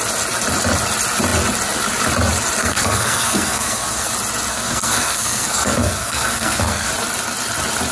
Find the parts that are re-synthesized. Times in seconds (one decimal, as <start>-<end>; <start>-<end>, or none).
2.6-4.1; 4.5-6.9